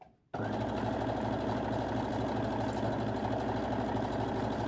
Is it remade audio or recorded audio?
recorded